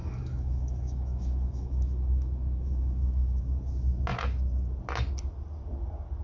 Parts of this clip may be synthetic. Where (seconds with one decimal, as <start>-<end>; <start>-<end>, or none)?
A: 0.0-3.4